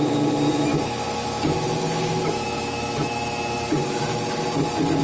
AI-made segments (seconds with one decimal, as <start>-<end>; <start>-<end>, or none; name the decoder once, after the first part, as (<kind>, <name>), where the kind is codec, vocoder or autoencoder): 0.7-3.7 (autoencoder, DAC-VAE)